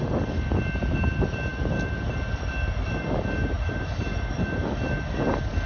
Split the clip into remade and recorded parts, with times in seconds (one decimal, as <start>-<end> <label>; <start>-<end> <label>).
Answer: 0.0-1.5 recorded; 1.5-2.5 remade; 2.5-4.6 recorded; 4.6-5.7 remade